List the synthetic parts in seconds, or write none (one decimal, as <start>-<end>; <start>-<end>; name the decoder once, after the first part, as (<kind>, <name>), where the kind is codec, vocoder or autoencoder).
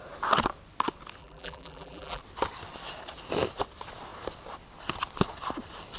1.2-2.2 (vocoder, BigVGAN v2)